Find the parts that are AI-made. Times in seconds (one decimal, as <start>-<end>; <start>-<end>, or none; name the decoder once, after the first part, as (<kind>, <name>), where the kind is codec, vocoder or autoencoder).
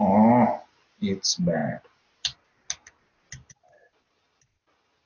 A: none